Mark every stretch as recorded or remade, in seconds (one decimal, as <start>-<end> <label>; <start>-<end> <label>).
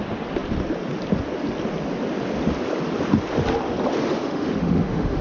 0.0-4.2 recorded; 4.2-5.2 remade